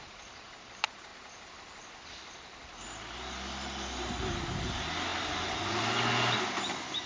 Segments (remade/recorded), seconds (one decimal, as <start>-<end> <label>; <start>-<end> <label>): 0.0-7.1 recorded